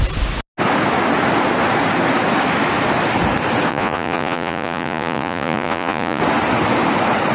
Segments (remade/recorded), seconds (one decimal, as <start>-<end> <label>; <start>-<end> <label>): 0.0-3.7 recorded; 3.7-6.2 remade; 6.2-7.3 recorded